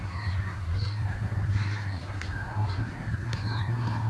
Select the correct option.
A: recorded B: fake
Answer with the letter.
B